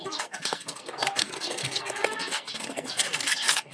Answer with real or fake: fake